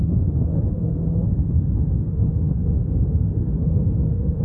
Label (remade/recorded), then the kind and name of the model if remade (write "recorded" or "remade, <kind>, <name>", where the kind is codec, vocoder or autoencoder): remade, autoencoder, DAC-VAE